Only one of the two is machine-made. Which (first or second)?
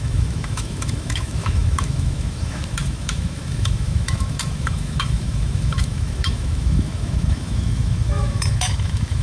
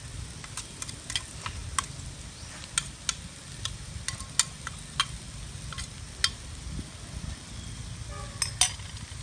first